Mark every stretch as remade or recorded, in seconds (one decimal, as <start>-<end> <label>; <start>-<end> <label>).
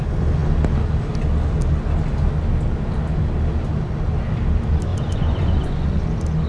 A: 0.0-4.9 recorded; 4.9-6.0 remade; 6.0-6.5 recorded